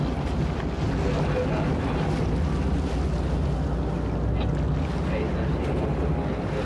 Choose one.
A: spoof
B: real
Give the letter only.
B